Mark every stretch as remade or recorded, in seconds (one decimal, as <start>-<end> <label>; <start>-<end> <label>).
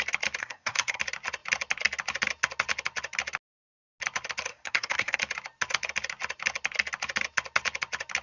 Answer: 0.0-0.4 recorded; 0.4-1.0 remade; 1.0-4.5 recorded; 4.5-5.2 remade; 5.2-8.2 recorded